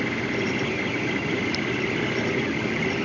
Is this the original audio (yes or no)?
yes